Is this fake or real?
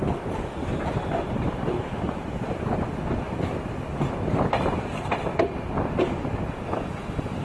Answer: real